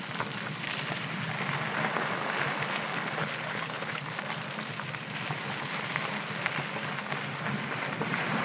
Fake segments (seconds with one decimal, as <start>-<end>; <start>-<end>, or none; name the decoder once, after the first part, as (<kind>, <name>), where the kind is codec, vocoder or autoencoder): 3.2-4.0 (codec, HILCodec)